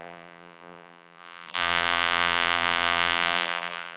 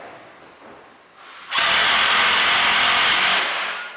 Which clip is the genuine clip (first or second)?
second